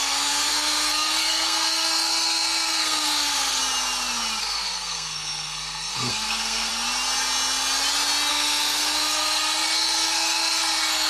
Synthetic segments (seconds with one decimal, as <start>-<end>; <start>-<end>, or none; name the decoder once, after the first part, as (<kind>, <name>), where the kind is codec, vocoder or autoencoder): 0.0-3.6 (codec, SNAC); 4.4-6.7; 8.3-11.1

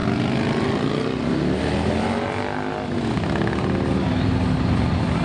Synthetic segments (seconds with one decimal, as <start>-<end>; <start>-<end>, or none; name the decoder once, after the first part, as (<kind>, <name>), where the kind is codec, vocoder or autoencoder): none

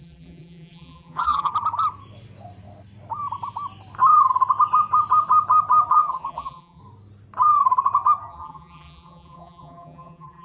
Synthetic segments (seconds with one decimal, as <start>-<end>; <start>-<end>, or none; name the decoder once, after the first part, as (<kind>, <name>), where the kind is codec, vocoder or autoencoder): 0.0-1.5 (vocoder, BigVGAN v2); 5.9-6.8; 8.3-10.4

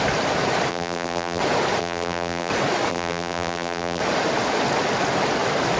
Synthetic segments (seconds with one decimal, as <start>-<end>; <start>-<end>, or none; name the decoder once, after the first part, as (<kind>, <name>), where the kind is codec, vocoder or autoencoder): 0.7-1.4 (vocoder, BigVGAN v2); 1.8-2.5; 2.9-4.0

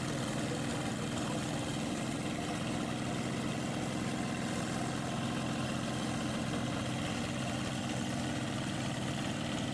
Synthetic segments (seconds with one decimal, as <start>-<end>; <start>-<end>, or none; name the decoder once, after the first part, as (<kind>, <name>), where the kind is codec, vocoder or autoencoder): none

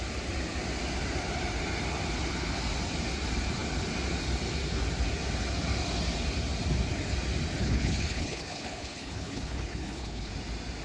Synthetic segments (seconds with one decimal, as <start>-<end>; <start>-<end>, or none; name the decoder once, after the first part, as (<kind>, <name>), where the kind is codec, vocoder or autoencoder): 7.6-10.3 (codec, HILCodec)

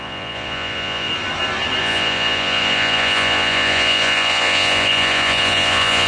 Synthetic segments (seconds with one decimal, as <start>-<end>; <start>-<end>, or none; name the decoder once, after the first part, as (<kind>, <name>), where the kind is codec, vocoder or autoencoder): 0.0-1.1 (vocoder, Vocos); 1.8-6.1

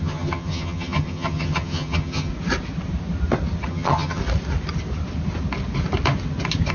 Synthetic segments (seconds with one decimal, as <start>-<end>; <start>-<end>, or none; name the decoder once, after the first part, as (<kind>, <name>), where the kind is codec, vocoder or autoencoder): 0.0-2.3 (vocoder, HiFi-GAN); 3.7-4.2